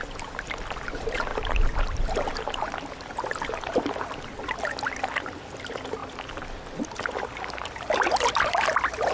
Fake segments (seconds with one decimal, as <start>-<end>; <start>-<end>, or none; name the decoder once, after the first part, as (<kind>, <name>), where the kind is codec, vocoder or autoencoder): none